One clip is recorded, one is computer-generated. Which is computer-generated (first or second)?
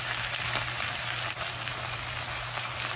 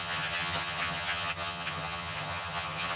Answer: second